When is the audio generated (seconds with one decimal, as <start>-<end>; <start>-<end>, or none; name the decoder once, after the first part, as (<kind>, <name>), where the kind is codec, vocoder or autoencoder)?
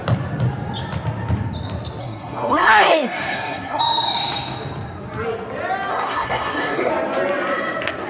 2.0-3.8 (codec, SNAC); 5.9-6.9